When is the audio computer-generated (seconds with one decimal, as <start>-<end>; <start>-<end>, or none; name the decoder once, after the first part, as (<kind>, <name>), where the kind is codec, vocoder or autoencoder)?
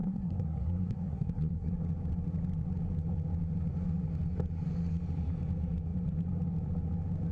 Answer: 0.0-1.7 (codec, SNAC)